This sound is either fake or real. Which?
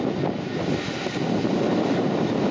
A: real